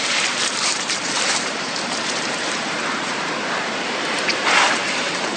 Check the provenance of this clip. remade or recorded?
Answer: remade